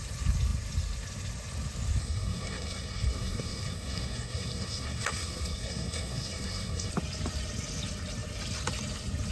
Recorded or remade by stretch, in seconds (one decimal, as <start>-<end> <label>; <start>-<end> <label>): 0.0-2.0 recorded; 2.0-6.9 remade; 6.9-9.3 recorded